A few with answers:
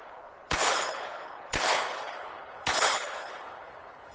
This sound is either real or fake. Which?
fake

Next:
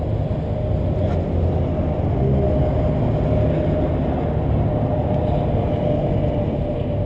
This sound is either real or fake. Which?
real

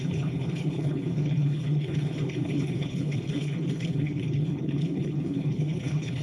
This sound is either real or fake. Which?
fake